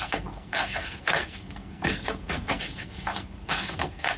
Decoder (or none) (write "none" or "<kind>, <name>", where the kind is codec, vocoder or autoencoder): codec, SNAC